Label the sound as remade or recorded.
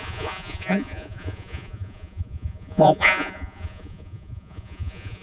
remade